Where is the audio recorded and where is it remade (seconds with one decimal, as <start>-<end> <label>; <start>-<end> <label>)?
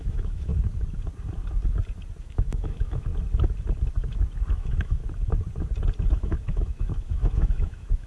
0.0-0.5 remade; 0.5-2.2 recorded; 2.2-3.1 remade; 3.1-4.5 recorded; 4.5-5.0 remade; 5.0-6.2 recorded; 6.2-8.1 remade